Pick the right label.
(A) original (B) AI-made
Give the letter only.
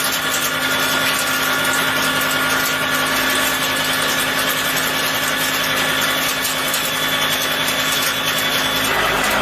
A